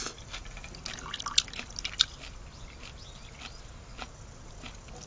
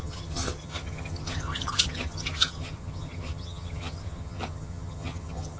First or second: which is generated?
second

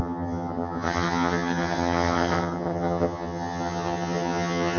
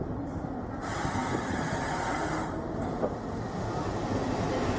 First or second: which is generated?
first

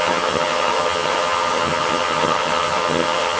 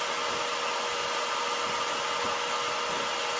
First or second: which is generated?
first